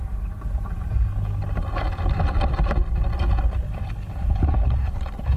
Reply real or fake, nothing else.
real